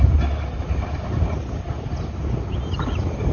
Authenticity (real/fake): real